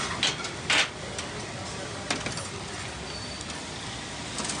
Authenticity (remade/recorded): recorded